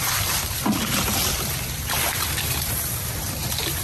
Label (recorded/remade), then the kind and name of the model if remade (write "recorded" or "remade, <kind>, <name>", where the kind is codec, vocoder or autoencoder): recorded